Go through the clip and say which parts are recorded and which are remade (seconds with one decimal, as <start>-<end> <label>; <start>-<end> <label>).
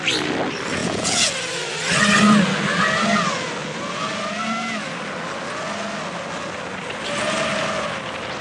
0.0-0.8 recorded; 0.8-1.3 remade; 1.3-8.4 recorded